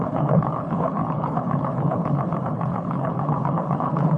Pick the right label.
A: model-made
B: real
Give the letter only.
A